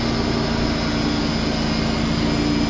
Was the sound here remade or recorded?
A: recorded